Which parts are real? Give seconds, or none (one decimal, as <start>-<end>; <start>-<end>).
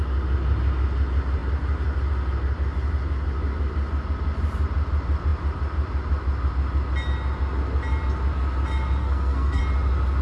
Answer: 0.0-9.0; 9.6-10.2